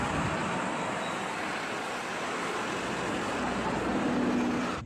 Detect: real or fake real